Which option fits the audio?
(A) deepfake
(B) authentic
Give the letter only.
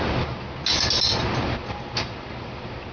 B